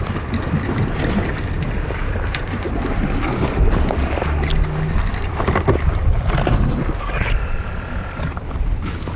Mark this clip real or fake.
real